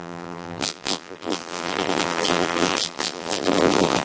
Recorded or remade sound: remade